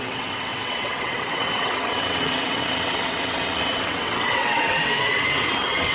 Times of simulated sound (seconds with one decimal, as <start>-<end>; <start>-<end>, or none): 0.0-5.9